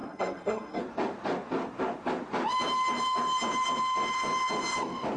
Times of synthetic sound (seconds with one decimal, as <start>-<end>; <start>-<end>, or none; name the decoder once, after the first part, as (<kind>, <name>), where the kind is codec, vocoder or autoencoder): 0.0-0.8 (codec, SNAC)

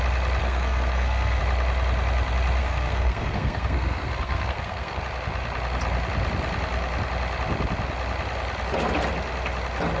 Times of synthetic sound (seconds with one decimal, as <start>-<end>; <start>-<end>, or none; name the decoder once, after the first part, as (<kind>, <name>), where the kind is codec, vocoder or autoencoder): 0.4-1.4 (codec, SNAC); 2.6-5.0

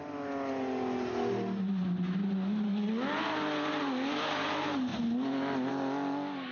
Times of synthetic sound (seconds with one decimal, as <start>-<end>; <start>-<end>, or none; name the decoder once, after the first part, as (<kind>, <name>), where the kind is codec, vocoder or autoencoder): none

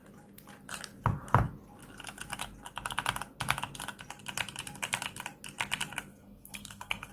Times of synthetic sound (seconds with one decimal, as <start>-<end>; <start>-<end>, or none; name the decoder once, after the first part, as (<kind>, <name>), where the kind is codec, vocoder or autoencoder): 6.1-7.1 (codec, SNAC)